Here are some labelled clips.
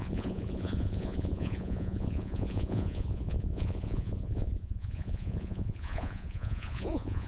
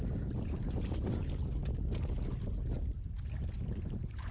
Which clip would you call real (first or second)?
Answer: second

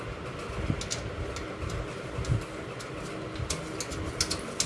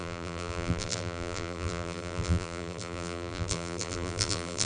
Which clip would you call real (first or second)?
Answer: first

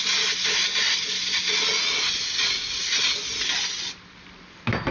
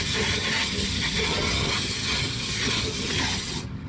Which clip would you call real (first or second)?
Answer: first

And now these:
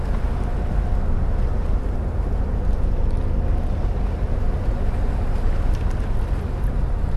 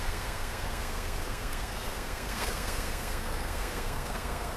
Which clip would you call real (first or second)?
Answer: first